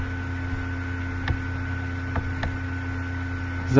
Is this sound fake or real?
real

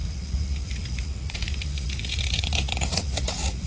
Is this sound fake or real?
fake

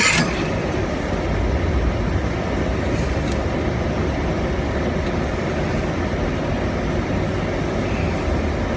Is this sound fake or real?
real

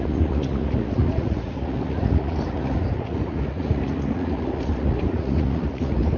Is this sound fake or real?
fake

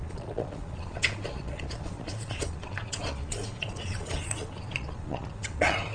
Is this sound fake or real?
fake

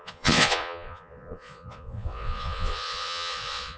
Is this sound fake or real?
fake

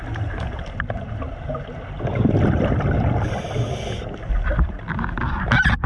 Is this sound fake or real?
real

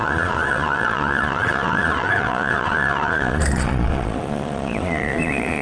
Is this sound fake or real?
fake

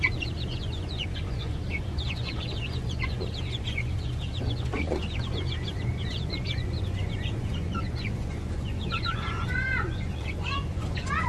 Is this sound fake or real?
fake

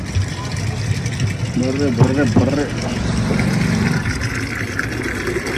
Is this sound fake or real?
real